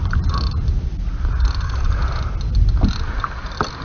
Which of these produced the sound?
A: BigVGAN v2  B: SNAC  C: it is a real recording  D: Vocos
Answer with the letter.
C